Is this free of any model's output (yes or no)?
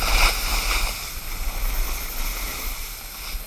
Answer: yes